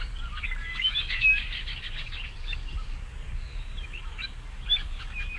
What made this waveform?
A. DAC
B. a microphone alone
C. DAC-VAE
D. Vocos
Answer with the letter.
A